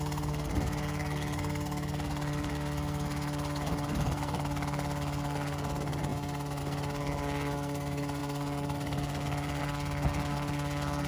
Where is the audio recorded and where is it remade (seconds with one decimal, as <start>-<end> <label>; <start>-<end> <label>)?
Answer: 0.0-11.1 remade